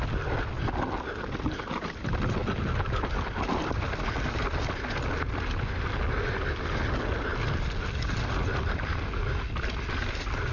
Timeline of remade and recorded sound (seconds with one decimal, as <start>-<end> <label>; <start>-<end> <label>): 0.0-10.5 recorded